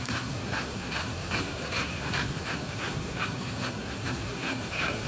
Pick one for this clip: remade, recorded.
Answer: remade